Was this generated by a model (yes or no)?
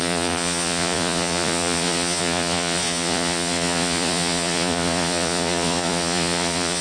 yes